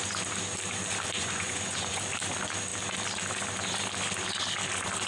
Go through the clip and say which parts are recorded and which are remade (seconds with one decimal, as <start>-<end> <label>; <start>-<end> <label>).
0.0-1.2 recorded; 1.2-2.0 remade; 2.0-5.1 recorded